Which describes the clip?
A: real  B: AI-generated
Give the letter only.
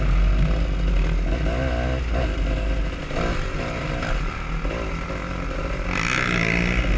A